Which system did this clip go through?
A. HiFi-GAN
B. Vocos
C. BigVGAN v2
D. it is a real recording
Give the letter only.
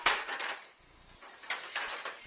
D